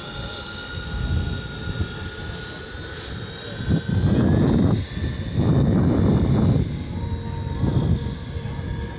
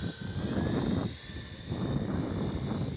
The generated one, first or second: second